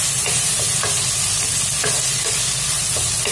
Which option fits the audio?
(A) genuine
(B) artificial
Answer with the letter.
A